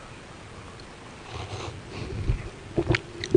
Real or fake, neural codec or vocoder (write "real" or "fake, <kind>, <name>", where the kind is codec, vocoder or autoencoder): real